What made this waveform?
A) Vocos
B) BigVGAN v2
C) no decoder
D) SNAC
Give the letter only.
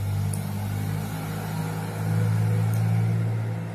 C